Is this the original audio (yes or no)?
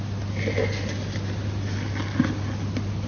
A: yes